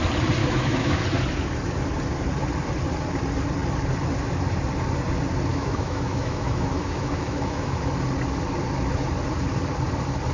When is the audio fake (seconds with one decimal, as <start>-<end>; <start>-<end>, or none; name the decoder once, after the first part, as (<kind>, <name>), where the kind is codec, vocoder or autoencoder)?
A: 0.4-1.0 (autoencoder, DAC-VAE); 5.5-7.9